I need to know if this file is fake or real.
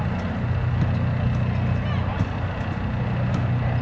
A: real